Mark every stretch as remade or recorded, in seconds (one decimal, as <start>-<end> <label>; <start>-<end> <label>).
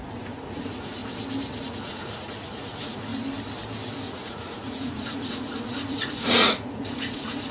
0.0-1.0 remade; 1.0-1.6 recorded; 1.6-3.1 remade; 3.1-4.0 recorded; 4.0-7.5 remade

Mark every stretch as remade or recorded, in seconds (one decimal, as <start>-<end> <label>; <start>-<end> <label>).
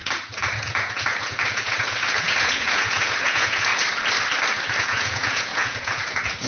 0.0-3.7 remade; 3.7-4.8 recorded; 4.8-6.5 remade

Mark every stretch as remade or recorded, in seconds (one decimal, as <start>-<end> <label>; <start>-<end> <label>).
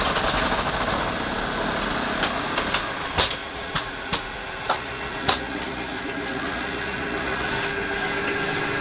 0.0-3.4 recorded; 3.4-7.5 remade; 7.5-8.8 recorded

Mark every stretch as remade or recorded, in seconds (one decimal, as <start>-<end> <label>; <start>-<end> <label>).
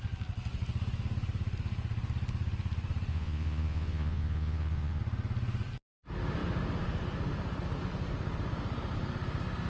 0.0-3.1 recorded; 3.1-5.0 remade; 5.0-9.7 recorded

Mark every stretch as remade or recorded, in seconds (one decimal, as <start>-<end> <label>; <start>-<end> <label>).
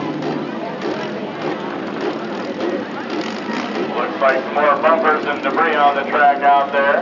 0.0-7.0 recorded